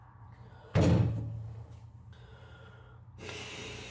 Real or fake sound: real